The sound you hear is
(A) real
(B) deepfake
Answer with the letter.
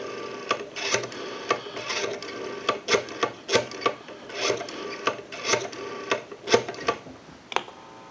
A